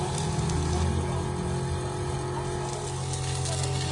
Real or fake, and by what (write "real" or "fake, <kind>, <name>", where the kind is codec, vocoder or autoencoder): real